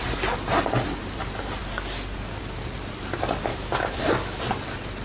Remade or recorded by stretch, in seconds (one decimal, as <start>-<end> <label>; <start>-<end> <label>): 0.0-3.5 recorded; 3.5-4.4 remade; 4.4-5.0 recorded